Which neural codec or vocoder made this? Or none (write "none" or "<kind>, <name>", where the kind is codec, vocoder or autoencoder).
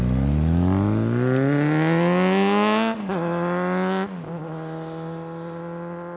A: none